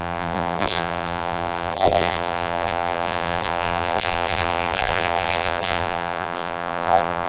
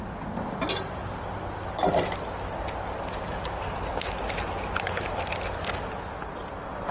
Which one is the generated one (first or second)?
first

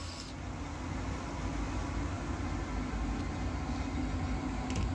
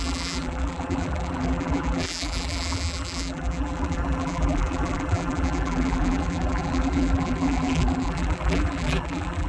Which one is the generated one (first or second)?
second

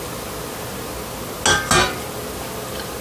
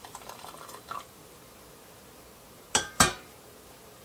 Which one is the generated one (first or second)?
second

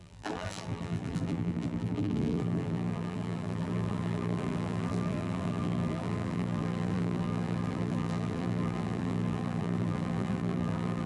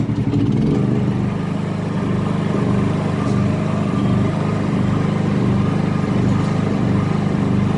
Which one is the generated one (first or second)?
first